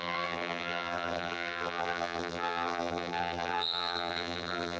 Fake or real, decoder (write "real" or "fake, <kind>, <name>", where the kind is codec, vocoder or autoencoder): fake, vocoder, BigVGAN v2